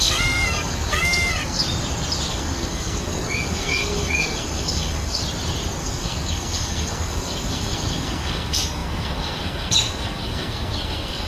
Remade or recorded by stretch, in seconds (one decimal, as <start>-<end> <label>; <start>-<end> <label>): 0.0-1.6 remade; 1.6-2.3 recorded; 2.3-5.2 remade; 5.2-5.8 recorded; 5.8-11.3 remade